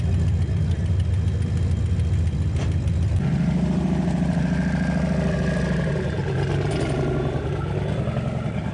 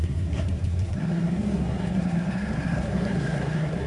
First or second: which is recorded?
first